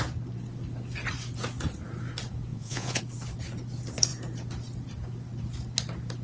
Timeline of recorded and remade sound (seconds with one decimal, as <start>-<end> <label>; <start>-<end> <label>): 0.0-2.5 recorded; 2.5-3.0 remade; 3.0-6.2 recorded